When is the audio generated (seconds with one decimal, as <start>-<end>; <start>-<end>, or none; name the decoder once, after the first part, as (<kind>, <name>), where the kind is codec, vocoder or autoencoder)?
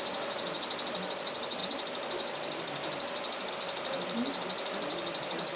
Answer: none